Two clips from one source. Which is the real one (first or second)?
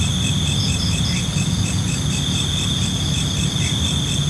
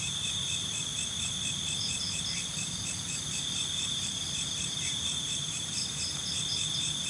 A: first